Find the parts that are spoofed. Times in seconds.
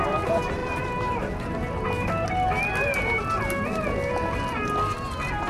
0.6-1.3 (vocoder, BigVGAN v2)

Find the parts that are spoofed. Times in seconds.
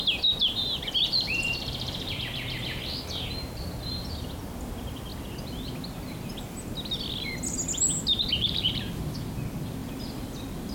0.4-2.2 (vocoder, BigVGAN v2); 9.8-10.7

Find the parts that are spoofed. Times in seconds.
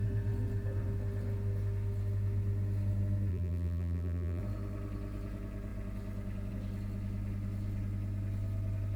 3.3-4.4 (vocoder, BigVGAN v2)